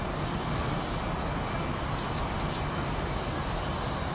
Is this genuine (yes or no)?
yes